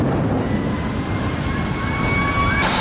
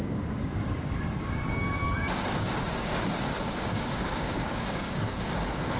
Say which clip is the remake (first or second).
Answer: second